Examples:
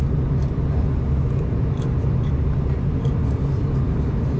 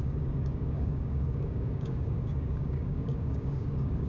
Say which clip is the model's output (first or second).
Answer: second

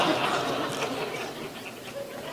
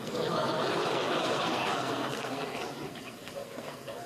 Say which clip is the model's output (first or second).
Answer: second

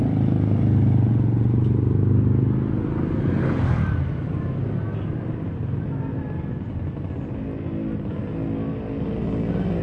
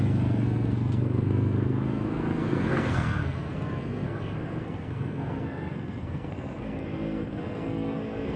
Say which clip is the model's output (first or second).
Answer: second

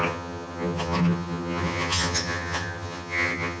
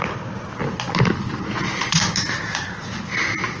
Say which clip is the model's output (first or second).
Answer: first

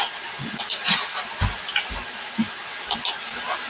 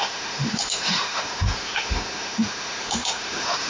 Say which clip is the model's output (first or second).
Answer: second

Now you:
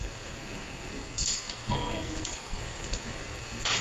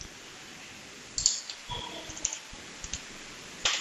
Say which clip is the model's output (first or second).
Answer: first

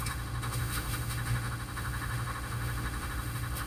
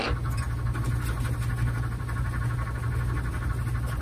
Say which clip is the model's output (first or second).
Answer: first